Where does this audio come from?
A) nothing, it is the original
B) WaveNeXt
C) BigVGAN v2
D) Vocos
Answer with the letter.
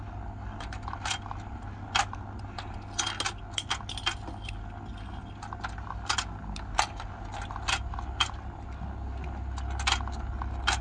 A